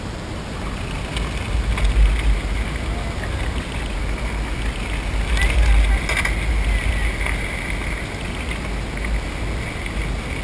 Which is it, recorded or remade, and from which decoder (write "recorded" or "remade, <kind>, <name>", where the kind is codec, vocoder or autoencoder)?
recorded